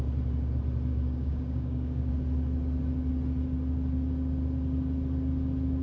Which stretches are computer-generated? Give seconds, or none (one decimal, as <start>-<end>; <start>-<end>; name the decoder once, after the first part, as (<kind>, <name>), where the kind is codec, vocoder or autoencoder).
0.9-2.1 (codec, DAC)